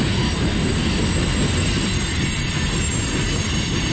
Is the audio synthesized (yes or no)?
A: no